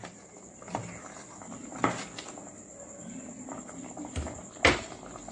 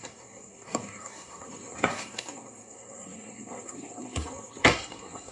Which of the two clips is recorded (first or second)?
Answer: first